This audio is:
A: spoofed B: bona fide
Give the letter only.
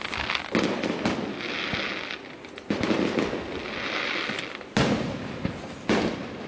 B